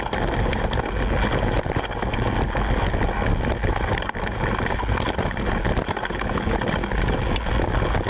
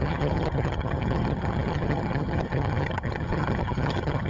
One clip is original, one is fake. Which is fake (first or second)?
second